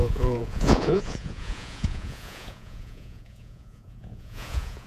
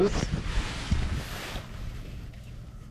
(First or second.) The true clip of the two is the second